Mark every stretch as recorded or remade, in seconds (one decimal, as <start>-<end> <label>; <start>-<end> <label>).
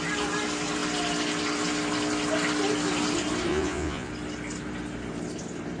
0.0-3.5 recorded; 3.5-4.1 remade; 4.1-5.8 recorded